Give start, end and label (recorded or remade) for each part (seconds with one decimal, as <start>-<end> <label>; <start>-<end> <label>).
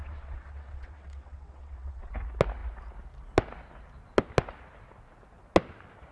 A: 0.0-2.1 remade; 2.1-6.1 recorded